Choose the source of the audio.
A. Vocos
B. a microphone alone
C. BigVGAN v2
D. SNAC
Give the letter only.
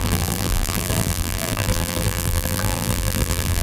C